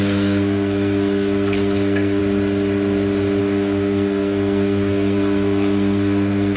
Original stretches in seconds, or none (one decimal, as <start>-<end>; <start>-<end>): 2.2-3.4

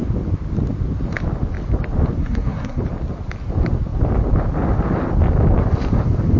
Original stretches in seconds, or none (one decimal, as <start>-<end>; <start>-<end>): 0.0-2.2; 2.8-6.4

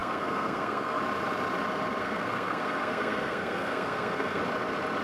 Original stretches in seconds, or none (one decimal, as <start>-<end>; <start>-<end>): 1.0-2.0; 4.4-5.0

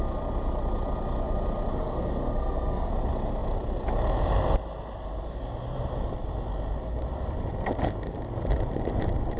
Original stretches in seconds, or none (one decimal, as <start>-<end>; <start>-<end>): 0.0-1.7; 2.9-9.4

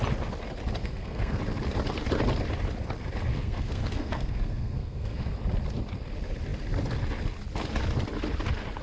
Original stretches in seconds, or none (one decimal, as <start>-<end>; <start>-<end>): 0.0-0.8; 1.4-3.3; 5.3-8.8

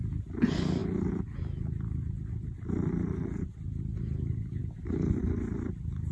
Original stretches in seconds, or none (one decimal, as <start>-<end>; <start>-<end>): 0.0-6.1

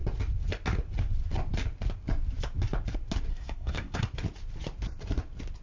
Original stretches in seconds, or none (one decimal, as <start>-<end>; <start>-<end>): 0.0-3.3; 4.0-5.6